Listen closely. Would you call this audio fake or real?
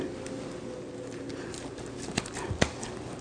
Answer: real